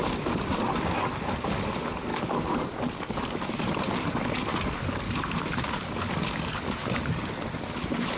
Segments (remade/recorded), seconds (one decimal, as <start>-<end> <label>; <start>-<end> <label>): 0.0-2.1 recorded; 2.1-3.6 remade; 3.6-4.5 recorded; 4.5-7.2 remade; 7.2-8.2 recorded